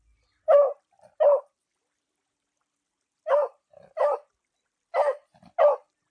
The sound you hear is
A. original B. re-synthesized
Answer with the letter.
A